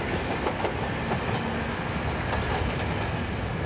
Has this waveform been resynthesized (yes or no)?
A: no